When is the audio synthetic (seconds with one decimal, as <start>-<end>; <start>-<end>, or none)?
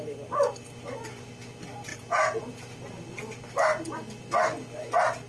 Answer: 1.9-2.4